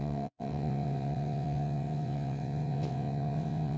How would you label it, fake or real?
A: fake